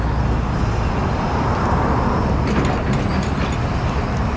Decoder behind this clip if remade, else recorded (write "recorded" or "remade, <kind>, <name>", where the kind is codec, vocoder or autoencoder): recorded